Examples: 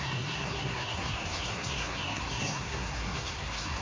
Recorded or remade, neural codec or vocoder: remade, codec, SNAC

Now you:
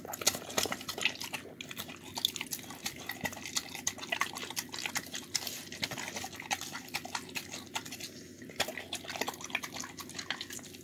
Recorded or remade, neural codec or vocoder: recorded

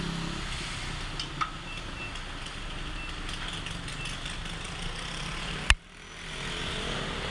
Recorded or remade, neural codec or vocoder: recorded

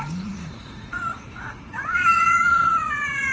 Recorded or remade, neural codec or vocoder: remade, vocoder, Vocos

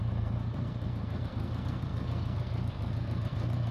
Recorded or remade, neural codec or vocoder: remade, codec, SNAC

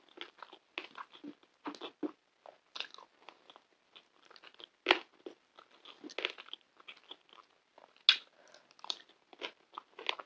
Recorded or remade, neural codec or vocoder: recorded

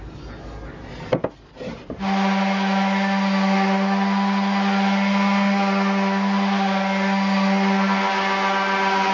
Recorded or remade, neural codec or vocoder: recorded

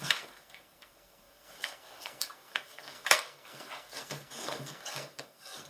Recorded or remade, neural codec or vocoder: remade, codec, SNAC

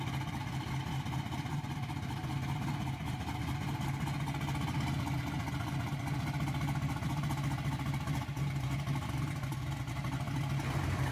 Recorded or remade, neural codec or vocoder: recorded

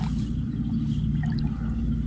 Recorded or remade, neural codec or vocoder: recorded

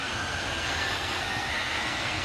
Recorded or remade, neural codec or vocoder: remade, codec, SNAC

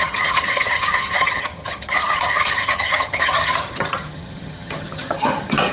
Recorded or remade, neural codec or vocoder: remade, vocoder, HiFi-GAN